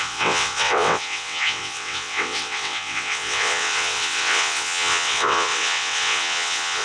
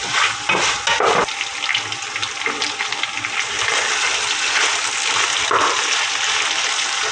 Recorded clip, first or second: second